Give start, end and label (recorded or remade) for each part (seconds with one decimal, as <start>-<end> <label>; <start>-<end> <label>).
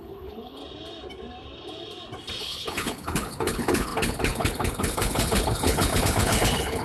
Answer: 0.0-0.6 remade; 0.6-2.4 recorded; 2.4-6.8 remade